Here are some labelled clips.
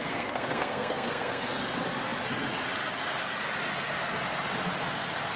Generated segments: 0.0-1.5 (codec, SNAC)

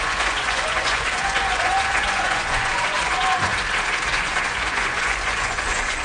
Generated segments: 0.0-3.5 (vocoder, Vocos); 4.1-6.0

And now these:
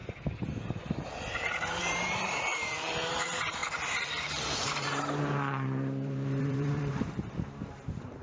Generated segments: 1.8-3.6 (vocoder, BigVGAN v2); 4.2-8.2

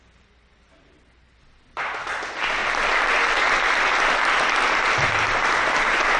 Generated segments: none

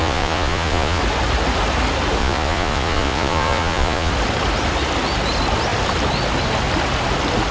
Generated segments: 0.0-1.0 (vocoder, Vocos); 2.2-4.1

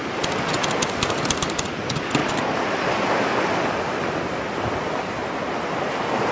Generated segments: none

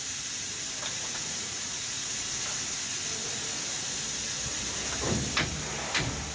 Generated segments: 0.9-2.1 (vocoder, Vocos)